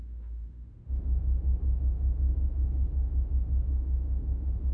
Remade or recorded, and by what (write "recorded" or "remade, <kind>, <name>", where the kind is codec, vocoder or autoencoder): remade, autoencoder, DAC-VAE